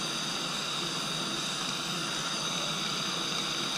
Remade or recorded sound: recorded